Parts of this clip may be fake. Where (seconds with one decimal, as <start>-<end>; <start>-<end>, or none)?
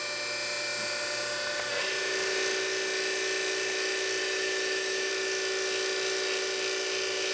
4.2-5.1